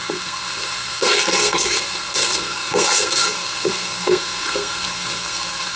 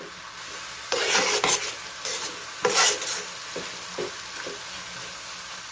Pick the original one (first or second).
second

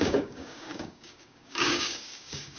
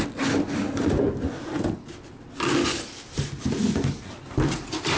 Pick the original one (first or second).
second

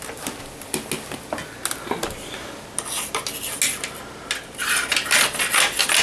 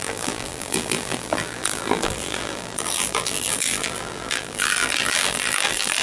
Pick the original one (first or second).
first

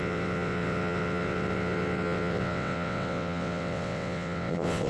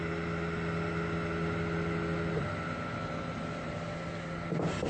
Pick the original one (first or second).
second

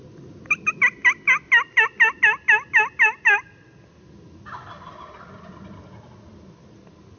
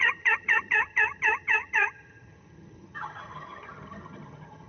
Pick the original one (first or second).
first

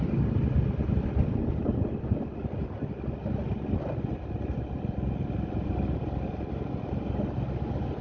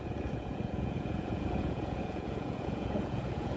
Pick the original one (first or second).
first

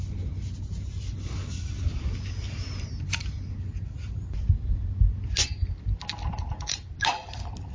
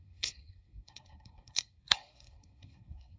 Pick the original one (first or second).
first